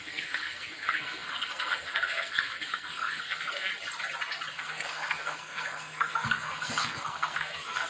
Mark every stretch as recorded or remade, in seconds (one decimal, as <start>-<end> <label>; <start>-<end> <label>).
0.0-3.7 remade; 3.7-4.5 recorded; 4.5-7.9 remade